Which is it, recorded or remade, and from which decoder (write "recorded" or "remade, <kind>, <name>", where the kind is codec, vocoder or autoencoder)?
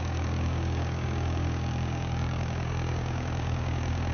remade, codec, DAC